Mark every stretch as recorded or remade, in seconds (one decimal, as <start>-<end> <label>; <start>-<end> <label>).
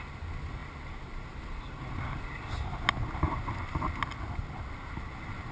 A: 0.0-5.5 recorded